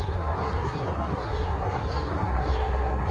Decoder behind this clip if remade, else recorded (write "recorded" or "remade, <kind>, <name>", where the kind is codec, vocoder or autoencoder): remade, codec, SNAC